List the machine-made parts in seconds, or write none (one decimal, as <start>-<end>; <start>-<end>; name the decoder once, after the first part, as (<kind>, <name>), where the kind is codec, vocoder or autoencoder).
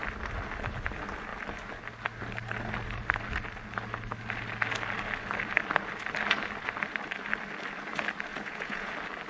8.3-8.9 (vocoder, Vocos)